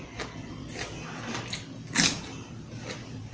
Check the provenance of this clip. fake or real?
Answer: real